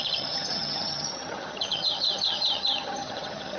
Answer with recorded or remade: remade